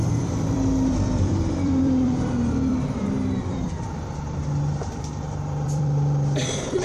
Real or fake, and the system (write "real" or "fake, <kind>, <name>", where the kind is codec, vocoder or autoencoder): fake, vocoder, BigVGAN v2